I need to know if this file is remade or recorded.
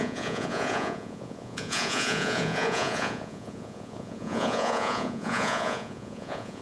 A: remade